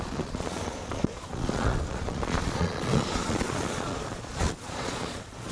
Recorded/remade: remade